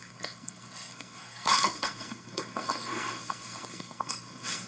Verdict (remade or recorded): remade